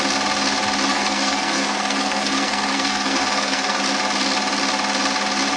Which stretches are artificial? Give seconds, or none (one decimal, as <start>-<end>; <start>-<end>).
0.9-3.8